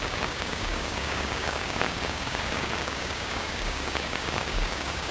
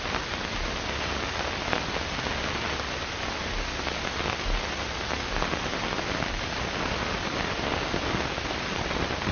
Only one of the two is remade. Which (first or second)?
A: first